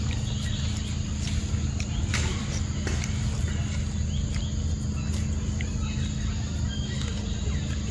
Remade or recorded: recorded